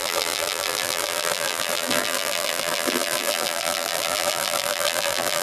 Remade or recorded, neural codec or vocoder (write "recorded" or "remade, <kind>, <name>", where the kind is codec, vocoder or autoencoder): remade, vocoder, BigVGAN v2